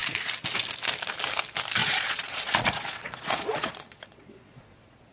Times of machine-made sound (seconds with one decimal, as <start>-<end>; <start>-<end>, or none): 1.8-5.1

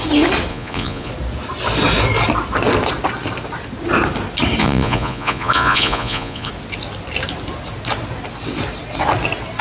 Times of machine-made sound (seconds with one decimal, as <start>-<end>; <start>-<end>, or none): 0.5-1.1; 4.6-6.5

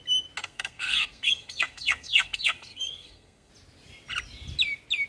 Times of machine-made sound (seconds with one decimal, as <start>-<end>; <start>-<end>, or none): 0.4-3.5

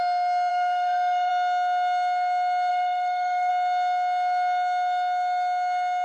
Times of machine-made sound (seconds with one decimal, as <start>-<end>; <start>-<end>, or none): 0.5-1.3; 2.7-3.5